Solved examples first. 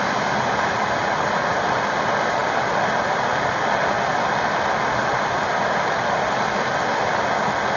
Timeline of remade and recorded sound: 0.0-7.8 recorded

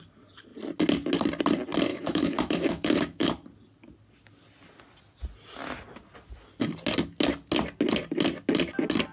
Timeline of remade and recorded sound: 0.0-1.9 recorded; 1.9-3.3 remade; 3.3-9.1 recorded

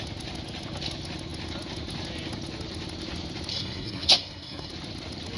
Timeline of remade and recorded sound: 0.0-3.5 recorded; 3.5-4.7 remade; 4.7-5.4 recorded

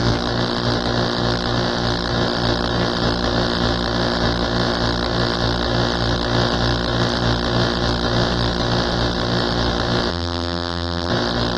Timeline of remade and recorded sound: 0.0-10.1 recorded; 10.1-11.1 remade; 11.1-11.6 recorded

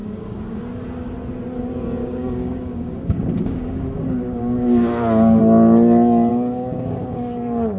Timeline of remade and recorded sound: 0.0-0.6 remade; 0.6-2.0 recorded; 2.0-5.4 remade; 5.4-6.3 recorded; 6.3-7.8 remade

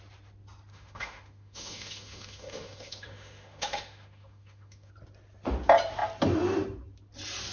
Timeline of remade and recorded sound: 0.0-0.7 recorded; 0.7-4.9 remade; 4.9-7.5 recorded